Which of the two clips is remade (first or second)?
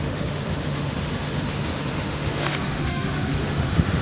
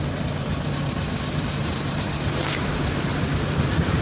first